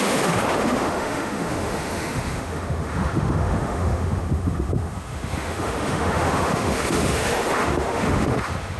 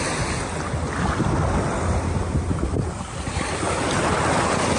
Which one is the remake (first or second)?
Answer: first